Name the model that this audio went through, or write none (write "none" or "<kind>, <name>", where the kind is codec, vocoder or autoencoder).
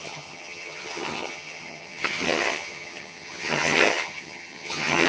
vocoder, HiFi-GAN